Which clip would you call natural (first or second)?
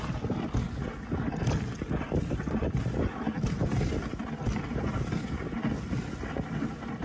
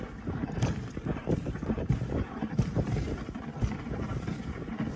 first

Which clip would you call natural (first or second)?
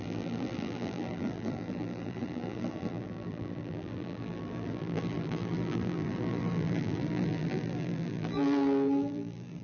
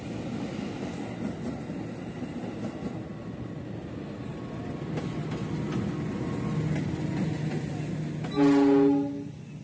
second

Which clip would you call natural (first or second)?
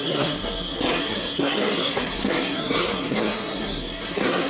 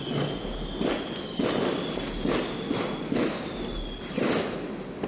second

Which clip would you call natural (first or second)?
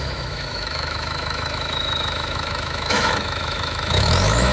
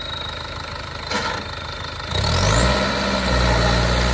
second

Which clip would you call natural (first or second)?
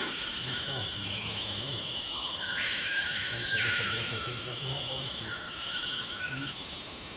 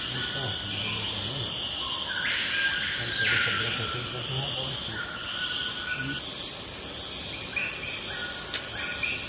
second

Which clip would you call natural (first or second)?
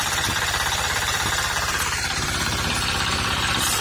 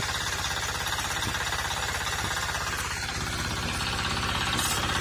second